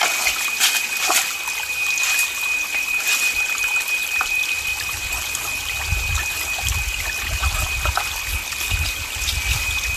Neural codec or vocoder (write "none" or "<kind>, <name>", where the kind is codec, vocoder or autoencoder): none